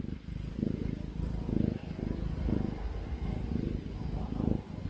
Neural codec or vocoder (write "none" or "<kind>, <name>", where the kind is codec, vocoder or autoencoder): none